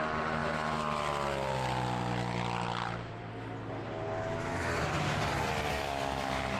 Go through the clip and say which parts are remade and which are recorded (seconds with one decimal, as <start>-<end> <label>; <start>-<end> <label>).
0.0-5.7 recorded; 5.7-6.6 remade

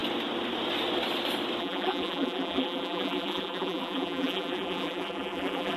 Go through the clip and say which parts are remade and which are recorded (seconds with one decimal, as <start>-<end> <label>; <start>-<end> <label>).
0.0-1.6 recorded; 1.6-5.8 remade

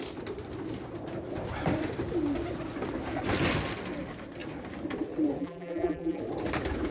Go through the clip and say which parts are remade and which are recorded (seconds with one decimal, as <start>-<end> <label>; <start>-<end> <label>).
0.0-5.4 recorded; 5.4-6.2 remade; 6.2-6.9 recorded

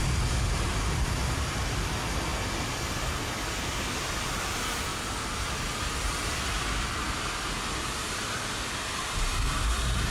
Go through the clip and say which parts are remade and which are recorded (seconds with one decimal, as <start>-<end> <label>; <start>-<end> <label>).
0.0-10.1 recorded

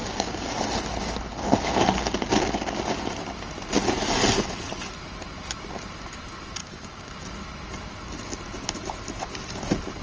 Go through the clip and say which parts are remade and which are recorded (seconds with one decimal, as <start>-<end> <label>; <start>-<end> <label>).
0.0-0.6 remade; 0.6-6.6 recorded; 6.6-7.1 remade; 7.1-10.0 recorded

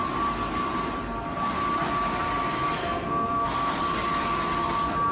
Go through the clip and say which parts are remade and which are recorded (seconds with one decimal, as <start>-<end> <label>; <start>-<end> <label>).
0.0-2.8 recorded; 2.8-3.8 remade; 3.8-5.1 recorded

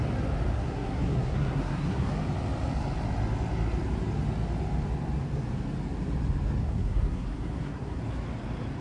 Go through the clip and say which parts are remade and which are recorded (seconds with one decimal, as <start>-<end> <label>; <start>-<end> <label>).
0.0-0.5 recorded; 0.5-2.1 remade; 2.1-6.6 recorded; 6.6-8.0 remade; 8.0-8.8 recorded

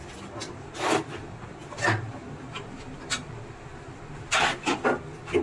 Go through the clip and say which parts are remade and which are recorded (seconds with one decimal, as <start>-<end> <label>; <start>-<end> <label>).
0.0-5.4 remade